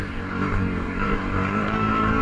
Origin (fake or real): fake